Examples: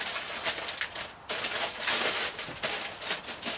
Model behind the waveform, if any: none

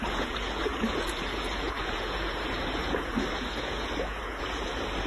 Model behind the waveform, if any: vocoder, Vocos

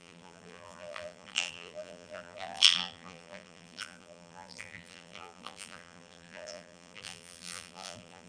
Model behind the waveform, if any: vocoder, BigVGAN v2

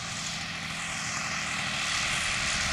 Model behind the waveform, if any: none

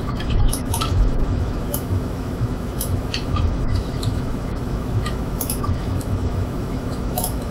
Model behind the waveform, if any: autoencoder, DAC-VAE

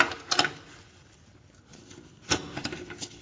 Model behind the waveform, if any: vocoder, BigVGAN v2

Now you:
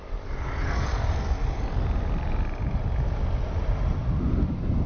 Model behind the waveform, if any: none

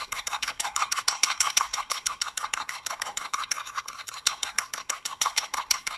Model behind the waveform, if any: codec, SNAC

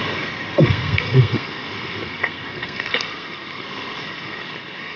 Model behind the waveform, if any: codec, SNAC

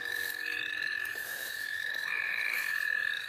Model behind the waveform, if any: autoencoder, DAC-VAE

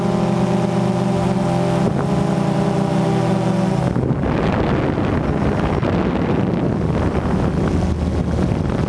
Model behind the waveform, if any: none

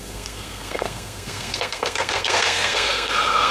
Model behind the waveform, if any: codec, SNAC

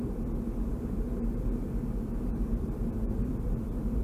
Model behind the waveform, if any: vocoder, BigVGAN v2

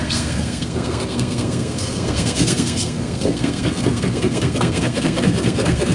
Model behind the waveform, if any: codec, SNAC